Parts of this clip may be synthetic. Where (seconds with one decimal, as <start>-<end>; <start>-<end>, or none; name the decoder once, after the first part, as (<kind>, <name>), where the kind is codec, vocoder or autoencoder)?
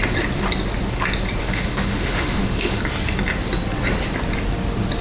1.4-2.8 (autoencoder, DAC-VAE)